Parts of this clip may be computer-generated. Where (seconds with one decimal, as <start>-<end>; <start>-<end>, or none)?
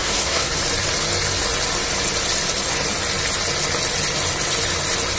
0.0-0.5